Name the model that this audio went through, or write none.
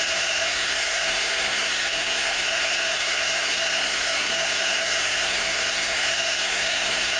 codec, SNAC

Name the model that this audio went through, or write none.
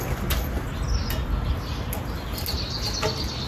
none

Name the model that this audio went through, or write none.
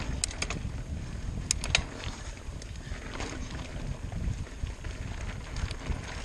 none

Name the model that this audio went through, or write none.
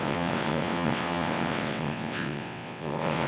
vocoder, WaveNeXt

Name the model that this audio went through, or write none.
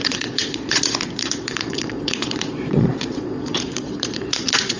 vocoder, Vocos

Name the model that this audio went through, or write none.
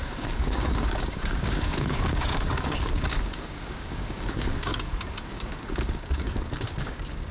codec, DAC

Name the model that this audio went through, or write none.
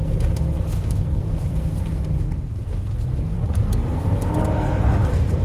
codec, SNAC